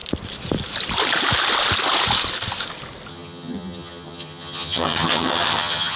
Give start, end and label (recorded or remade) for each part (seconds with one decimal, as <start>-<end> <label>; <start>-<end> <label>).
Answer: 0.0-3.1 recorded; 3.1-6.0 remade